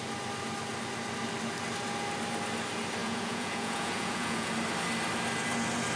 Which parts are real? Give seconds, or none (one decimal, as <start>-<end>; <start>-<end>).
0.0-3.0; 4.5-6.0